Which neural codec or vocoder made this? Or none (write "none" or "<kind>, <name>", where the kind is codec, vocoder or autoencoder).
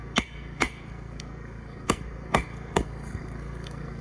codec, SNAC